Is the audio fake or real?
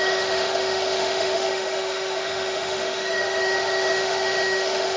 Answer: fake